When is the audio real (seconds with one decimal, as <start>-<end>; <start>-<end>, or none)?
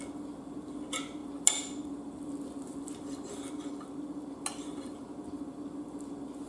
0.0-6.5